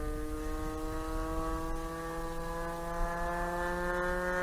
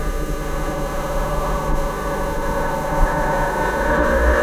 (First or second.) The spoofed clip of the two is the second